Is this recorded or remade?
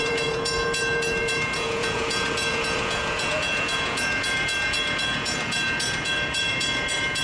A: remade